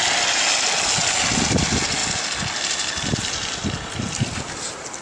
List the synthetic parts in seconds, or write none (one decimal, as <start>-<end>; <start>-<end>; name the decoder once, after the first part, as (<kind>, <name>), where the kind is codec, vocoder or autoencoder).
none